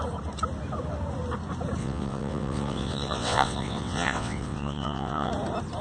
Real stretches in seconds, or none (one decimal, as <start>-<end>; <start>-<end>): 0.0-1.8; 5.3-5.8